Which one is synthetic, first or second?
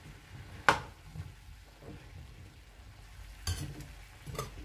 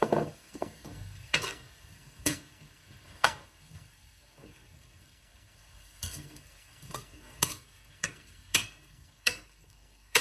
second